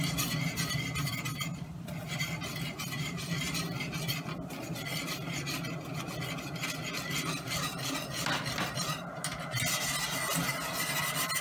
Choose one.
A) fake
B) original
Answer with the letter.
B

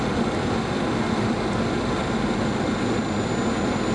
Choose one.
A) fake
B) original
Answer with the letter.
B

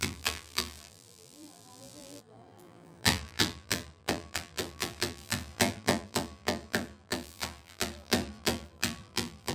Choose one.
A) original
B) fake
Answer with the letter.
B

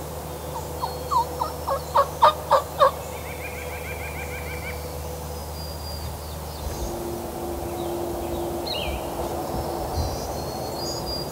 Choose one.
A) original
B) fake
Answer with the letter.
A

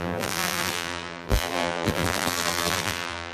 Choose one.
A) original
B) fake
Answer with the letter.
B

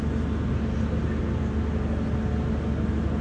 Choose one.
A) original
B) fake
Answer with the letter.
A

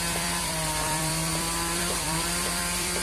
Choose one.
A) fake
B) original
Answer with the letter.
A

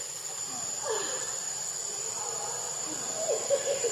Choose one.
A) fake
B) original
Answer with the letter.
B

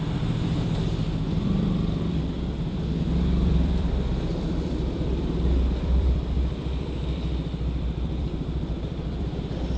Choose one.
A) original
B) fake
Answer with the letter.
B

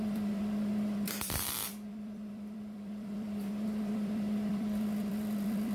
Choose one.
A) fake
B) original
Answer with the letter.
A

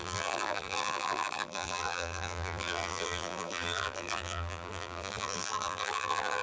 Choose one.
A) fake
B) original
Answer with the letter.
A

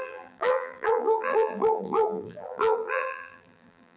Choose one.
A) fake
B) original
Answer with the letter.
A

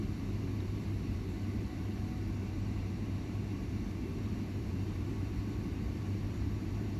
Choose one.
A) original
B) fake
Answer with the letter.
B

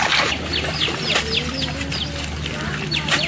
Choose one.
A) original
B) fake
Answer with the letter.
A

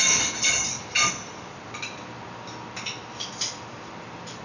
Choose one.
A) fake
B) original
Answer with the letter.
B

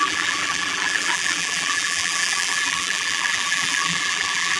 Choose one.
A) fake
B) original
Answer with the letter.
A